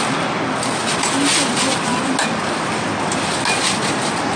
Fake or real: real